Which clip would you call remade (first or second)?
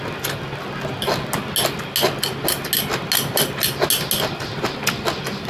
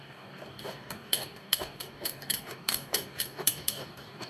second